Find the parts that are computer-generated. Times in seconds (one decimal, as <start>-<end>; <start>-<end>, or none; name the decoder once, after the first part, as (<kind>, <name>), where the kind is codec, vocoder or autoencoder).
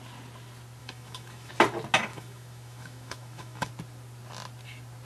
0.8-1.5 (autoencoder, DAC-VAE); 2.1-3.7